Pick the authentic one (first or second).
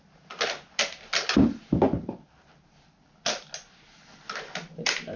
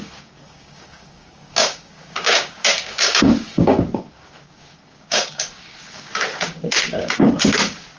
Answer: first